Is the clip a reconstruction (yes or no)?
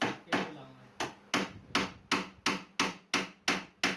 no